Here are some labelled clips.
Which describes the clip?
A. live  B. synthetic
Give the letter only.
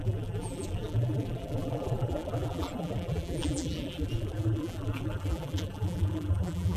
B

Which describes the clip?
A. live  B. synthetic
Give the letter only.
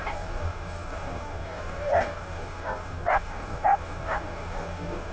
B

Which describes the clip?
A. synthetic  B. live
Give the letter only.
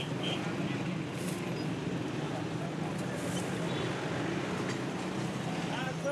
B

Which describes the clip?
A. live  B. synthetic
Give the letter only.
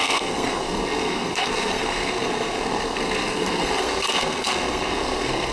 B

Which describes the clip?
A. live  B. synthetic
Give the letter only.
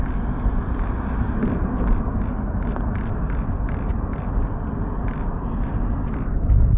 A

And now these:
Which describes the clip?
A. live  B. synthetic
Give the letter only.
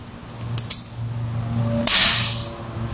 A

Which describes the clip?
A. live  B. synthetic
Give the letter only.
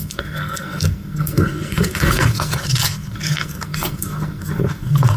B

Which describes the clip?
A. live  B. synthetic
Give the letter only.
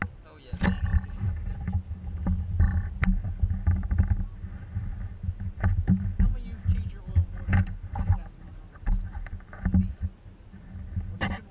A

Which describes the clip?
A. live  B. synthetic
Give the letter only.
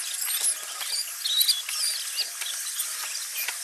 A